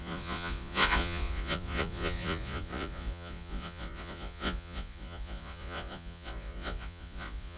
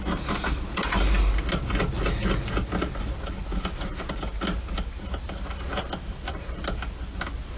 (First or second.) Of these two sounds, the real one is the second